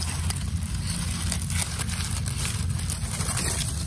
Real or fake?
real